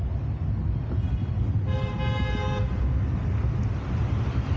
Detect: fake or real real